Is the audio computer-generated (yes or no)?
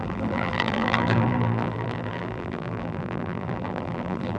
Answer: yes